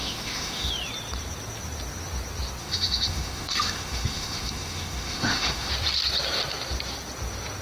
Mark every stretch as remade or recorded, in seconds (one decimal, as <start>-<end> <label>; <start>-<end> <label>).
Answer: 0.0-0.7 remade; 0.7-2.6 recorded; 2.6-5.7 remade; 5.7-7.6 recorded